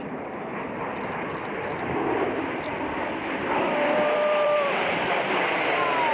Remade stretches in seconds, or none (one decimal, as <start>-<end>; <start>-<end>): 1.7-5.4